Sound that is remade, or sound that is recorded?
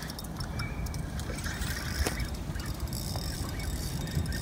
remade